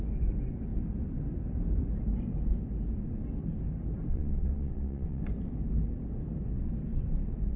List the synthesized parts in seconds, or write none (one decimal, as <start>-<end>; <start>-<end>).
4.1-5.2